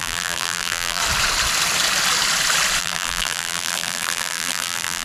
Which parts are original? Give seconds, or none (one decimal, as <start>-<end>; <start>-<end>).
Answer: 1.0-2.8